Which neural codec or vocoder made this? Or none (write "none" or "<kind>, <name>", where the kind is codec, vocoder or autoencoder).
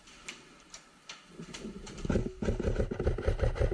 none